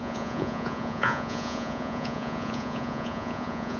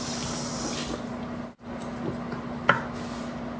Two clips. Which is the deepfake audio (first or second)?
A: first